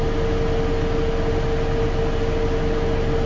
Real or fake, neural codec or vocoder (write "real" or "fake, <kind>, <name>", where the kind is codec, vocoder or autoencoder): real